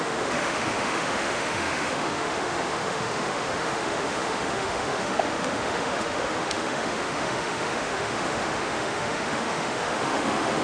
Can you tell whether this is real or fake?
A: fake